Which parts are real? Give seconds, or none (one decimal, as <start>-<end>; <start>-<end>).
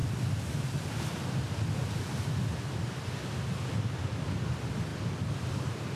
0.0-6.0